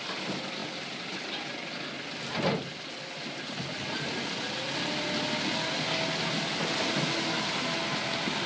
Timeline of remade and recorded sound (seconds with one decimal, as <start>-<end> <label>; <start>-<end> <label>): 0.0-8.5 recorded